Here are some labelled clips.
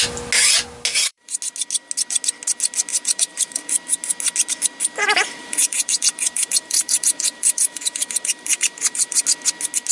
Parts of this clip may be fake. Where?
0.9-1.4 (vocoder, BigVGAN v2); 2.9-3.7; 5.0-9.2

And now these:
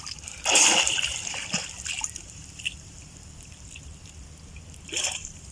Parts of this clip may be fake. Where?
0.0-5.5 (vocoder, BigVGAN v2)

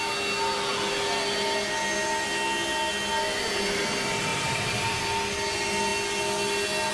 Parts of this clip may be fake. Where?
4.3-5.0 (vocoder, BigVGAN v2)

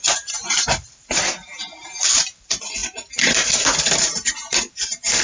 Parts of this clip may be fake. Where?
0.0-5.2 (vocoder, BigVGAN v2)

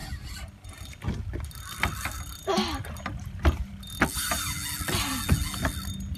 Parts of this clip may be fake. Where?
none

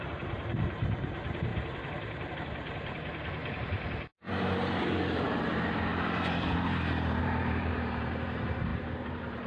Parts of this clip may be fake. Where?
0.0-1.5 (vocoder, BigVGAN v2); 2.3-9.5

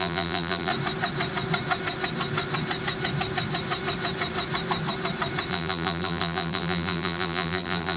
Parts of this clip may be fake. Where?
0.0-0.7 (vocoder, BigVGAN v2); 5.5-8.0

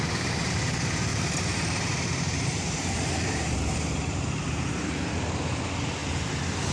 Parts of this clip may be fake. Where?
1.1-5.1 (vocoder, BigVGAN v2)